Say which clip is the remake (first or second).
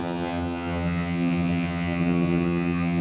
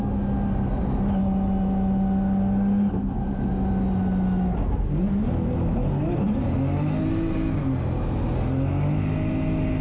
first